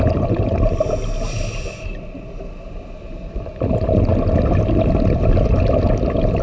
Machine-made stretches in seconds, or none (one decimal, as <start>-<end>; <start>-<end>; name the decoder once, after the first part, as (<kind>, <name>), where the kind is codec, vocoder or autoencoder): none